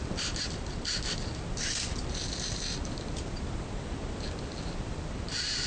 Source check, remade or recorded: remade